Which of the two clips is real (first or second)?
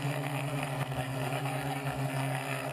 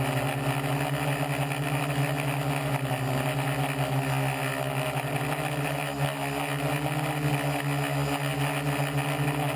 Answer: second